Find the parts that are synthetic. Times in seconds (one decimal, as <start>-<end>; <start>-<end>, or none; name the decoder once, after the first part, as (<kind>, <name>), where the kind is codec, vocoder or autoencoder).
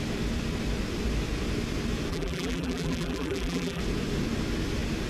2.1-3.8 (vocoder, BigVGAN v2)